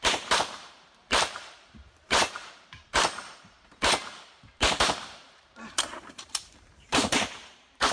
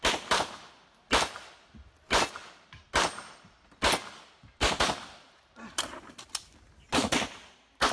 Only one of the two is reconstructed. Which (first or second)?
first